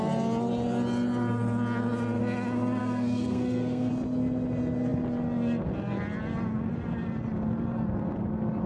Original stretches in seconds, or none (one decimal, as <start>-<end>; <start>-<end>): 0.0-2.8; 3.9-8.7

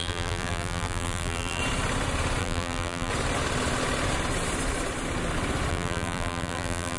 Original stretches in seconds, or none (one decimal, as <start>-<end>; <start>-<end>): 1.6-2.4; 3.1-5.7

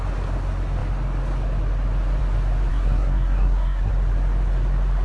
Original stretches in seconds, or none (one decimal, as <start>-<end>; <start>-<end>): 0.0-2.7; 3.9-5.0

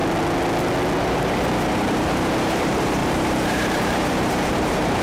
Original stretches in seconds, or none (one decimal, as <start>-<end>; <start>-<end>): 0.0-1.0